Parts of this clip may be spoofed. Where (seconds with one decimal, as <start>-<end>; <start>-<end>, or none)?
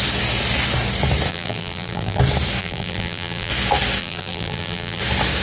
1.3-2.2; 2.6-3.5; 4.0-5.0